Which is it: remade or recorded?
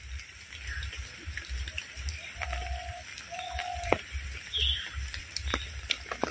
remade